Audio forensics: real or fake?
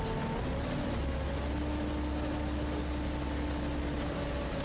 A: real